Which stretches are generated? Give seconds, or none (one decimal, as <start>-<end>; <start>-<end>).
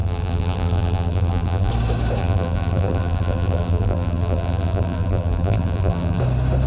0.0-1.7; 2.2-6.2